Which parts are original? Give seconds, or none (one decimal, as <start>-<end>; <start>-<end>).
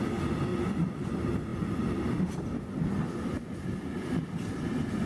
0.0-0.5; 1.1-5.1